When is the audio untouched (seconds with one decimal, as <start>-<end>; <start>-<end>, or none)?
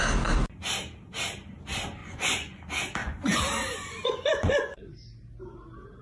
0.0-2.0; 2.6-3.0; 4.8-6.0